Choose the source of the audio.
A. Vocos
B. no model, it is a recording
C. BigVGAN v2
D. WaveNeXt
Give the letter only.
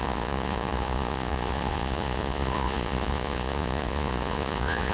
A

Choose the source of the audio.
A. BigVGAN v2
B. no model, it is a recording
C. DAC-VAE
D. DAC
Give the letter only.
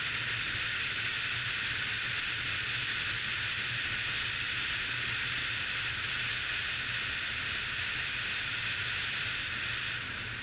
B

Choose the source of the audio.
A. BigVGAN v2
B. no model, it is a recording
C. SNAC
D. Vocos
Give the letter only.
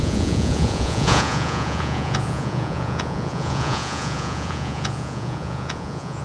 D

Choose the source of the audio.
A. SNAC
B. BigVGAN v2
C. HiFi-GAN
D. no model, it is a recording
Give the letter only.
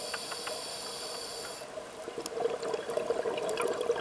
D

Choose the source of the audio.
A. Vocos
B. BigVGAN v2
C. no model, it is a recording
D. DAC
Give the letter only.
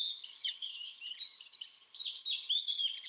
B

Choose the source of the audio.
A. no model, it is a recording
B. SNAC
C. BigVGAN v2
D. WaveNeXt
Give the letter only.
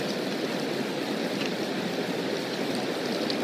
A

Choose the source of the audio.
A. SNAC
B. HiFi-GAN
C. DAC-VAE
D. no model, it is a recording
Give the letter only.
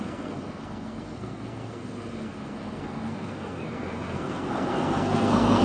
A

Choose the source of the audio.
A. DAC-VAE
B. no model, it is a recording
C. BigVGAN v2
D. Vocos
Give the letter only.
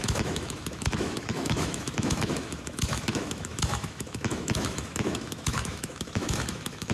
A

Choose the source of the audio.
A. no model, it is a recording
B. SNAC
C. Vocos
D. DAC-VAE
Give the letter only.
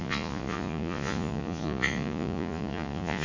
C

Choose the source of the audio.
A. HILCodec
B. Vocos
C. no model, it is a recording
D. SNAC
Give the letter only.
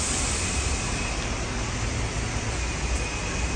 C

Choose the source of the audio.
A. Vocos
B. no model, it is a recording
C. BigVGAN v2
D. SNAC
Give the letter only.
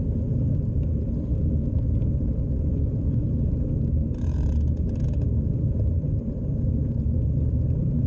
C